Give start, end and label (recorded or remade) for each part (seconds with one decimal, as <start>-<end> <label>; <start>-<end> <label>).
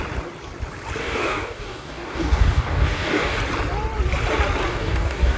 0.0-1.0 recorded; 1.0-3.4 remade; 3.4-4.7 recorded; 4.7-5.4 remade